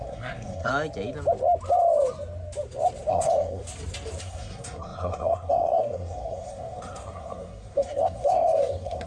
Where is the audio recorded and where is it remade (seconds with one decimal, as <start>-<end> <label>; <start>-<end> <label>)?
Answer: 0.0-0.7 remade; 0.7-3.1 recorded; 3.1-3.6 remade; 3.6-4.2 recorded; 4.2-9.1 remade